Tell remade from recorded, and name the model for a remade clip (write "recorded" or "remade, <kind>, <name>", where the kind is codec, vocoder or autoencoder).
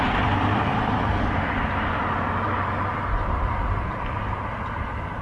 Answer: remade, vocoder, BigVGAN v2